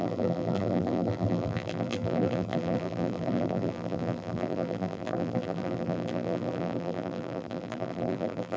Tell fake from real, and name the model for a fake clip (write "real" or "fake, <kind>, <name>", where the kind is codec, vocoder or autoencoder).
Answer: fake, vocoder, BigVGAN v2